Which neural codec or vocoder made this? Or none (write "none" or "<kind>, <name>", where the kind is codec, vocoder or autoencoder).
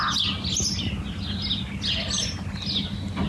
none